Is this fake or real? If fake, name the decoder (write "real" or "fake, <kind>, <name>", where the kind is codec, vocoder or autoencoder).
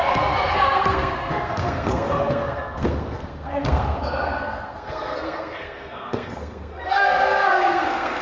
fake, codec, SNAC